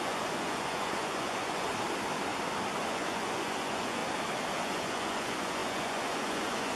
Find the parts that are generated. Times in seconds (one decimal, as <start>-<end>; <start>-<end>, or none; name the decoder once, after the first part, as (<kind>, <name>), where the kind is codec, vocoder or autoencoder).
0.0-1.7 (vocoder, Vocos); 2.8-4.0; 4.6-6.8